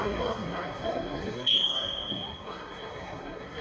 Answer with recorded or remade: remade